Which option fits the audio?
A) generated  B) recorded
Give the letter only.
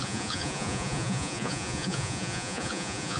A